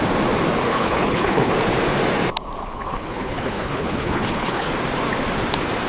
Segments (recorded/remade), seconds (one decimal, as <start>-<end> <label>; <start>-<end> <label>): 0.0-0.7 recorded; 0.7-1.5 remade; 1.5-2.6 recorded; 2.6-4.7 remade; 4.7-5.9 recorded